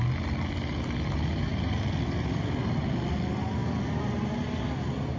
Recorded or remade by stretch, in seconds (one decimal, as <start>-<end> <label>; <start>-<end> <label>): 0.0-5.2 recorded